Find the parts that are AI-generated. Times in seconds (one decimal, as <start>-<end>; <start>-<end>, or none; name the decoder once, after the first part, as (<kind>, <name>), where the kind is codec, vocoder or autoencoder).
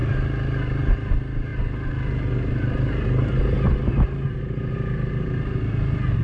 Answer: none